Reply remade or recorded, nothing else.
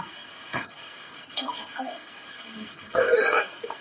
remade